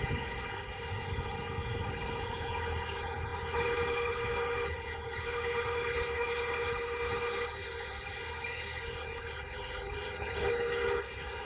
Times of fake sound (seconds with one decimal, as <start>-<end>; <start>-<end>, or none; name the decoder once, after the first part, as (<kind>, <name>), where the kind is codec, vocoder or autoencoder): 0.0-11.5 (codec, HILCodec)